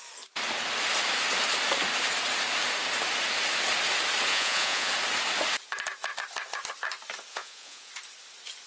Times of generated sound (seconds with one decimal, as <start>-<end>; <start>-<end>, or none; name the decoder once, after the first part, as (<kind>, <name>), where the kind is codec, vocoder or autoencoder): 4.3-4.9 (vocoder, Vocos); 7.3-7.9